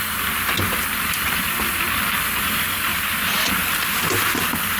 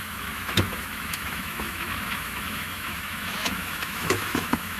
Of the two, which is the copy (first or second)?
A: second